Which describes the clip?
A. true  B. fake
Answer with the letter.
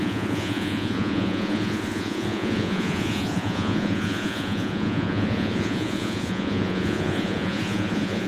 B